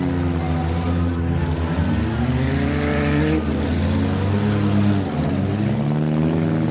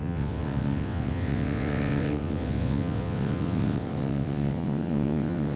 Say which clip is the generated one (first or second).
second